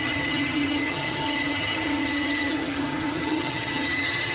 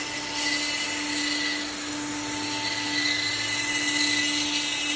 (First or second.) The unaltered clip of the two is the second